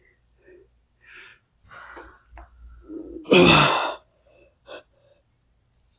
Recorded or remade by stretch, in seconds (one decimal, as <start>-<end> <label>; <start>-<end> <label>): 0.0-6.0 recorded